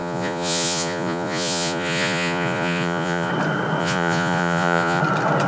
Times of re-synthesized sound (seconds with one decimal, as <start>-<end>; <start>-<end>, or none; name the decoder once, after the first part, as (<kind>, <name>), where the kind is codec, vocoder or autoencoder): 0.0-3.3 (vocoder, Vocos); 3.8-5.0